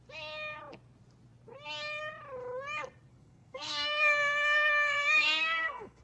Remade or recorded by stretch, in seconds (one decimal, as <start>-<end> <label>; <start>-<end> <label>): 0.0-3.1 recorded; 3.1-6.0 remade